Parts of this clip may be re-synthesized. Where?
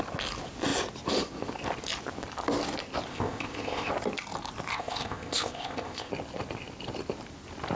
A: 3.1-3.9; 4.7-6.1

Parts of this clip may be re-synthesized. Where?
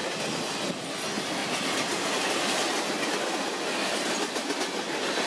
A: none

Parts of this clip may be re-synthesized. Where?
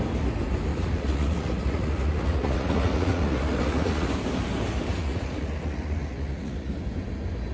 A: 0.7-4.1; 5.0-6.7